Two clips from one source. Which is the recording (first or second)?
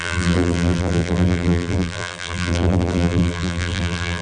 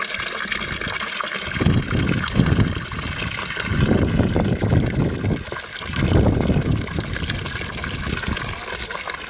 second